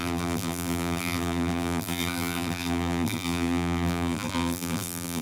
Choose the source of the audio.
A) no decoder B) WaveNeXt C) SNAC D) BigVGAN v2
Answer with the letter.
D